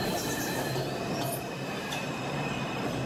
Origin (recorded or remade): recorded